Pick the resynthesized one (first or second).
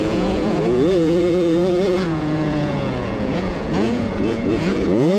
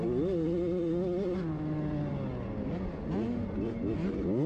first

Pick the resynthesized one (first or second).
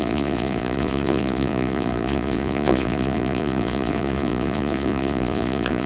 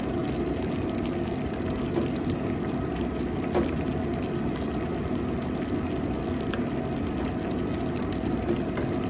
first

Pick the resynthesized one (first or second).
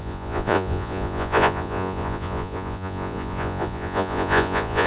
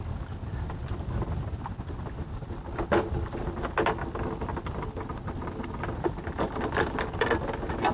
first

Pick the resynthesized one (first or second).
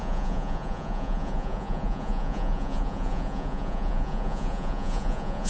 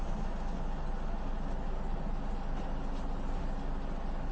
first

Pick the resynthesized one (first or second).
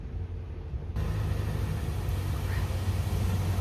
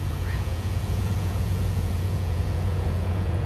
second